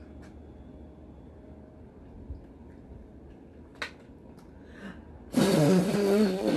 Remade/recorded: recorded